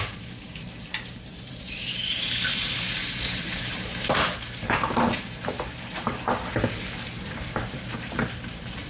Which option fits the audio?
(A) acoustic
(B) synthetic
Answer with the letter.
B